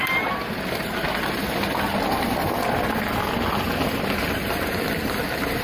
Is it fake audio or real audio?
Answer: real